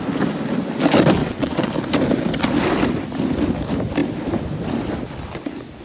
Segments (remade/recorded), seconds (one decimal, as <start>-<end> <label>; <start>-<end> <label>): 0.0-1.2 recorded; 1.2-1.7 remade; 1.7-5.8 recorded